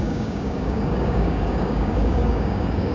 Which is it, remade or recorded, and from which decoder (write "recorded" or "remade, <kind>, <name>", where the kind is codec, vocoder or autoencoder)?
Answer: remade, codec, DAC